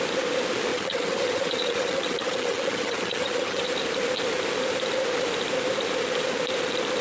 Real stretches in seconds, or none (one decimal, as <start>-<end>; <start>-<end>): 0.0-0.7; 3.6-7.0